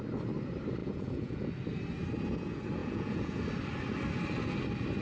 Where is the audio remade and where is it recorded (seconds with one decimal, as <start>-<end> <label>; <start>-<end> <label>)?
0.0-0.8 recorded; 0.8-1.5 remade; 1.5-2.8 recorded; 2.8-3.4 remade; 3.4-5.0 recorded